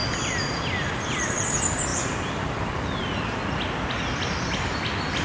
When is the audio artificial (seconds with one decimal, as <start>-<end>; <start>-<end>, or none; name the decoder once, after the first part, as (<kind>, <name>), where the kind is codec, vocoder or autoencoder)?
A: 0.0-0.6 (vocoder, BigVGAN v2)